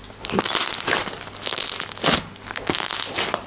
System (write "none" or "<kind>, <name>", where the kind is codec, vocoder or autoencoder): none